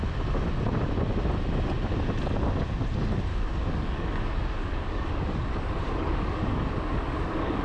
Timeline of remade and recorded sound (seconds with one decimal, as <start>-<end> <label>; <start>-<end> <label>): 0.0-3.3 recorded; 3.3-7.6 remade